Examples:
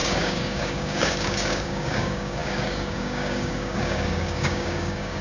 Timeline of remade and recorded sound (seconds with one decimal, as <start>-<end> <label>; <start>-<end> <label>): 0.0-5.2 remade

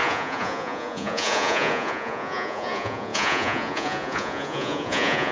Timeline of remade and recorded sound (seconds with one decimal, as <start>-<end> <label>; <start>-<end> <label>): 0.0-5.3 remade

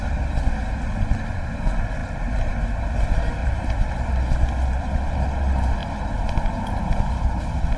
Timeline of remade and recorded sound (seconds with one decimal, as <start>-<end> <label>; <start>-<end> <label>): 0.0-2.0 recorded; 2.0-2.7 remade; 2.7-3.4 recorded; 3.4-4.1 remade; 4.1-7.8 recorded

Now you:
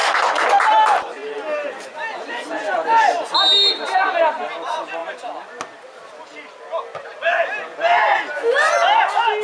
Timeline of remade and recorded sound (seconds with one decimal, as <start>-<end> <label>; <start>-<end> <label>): 0.0-9.4 recorded

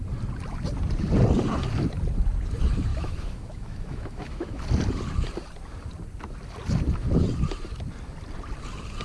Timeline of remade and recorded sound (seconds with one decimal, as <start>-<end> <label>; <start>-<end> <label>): 0.0-2.9 recorded; 2.9-4.6 remade; 4.6-9.0 recorded

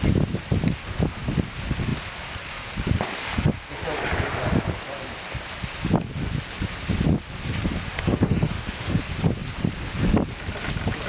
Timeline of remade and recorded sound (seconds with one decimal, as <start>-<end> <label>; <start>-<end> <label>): 0.0-7.9 recorded; 7.9-9.0 remade; 9.0-11.1 recorded